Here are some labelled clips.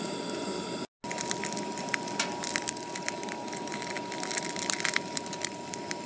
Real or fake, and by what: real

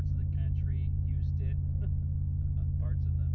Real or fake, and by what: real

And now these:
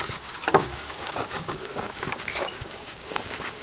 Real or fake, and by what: fake, codec, DAC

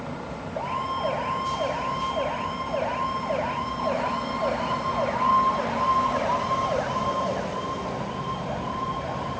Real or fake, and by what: real